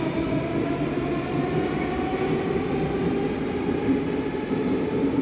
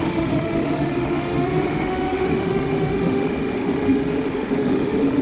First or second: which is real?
first